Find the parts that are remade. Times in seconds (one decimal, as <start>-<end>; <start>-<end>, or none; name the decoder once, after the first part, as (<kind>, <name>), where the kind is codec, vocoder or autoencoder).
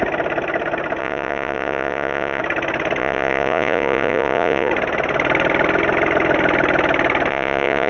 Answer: 1.0-2.4 (vocoder, Vocos); 3.0-4.7; 7.3-7.9